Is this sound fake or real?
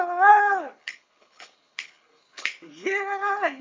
fake